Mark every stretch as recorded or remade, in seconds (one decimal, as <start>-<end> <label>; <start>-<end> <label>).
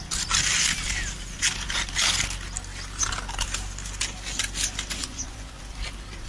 0.0-5.0 recorded; 5.0-5.6 remade; 5.6-6.3 recorded